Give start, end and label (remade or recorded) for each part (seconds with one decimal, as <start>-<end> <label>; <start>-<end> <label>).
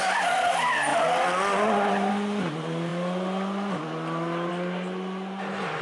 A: 0.0-5.8 recorded